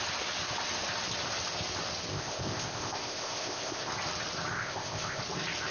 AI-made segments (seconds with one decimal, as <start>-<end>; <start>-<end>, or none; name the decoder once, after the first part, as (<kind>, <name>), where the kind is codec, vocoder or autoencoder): 2.1-3.9 (codec, ZipCodec); 4.5-5.2